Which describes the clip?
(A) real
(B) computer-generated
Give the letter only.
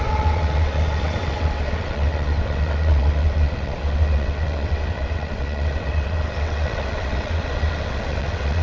B